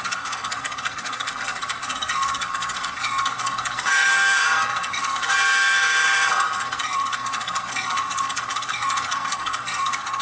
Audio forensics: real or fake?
fake